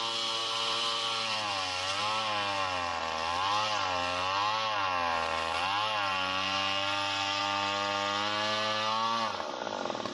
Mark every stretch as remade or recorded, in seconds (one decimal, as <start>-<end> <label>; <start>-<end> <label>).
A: 0.0-0.4 recorded; 0.4-2.0 remade; 2.0-10.1 recorded